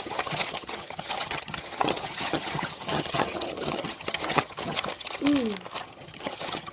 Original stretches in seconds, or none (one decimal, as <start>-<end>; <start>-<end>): 5.2-5.8